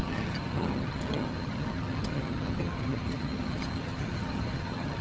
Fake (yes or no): yes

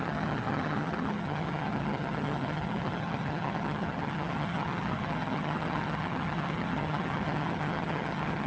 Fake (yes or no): yes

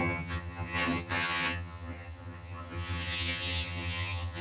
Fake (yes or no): yes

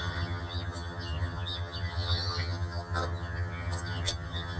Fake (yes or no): yes